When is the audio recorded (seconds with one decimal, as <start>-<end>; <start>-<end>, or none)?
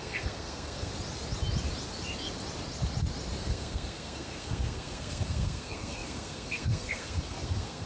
0.9-3.4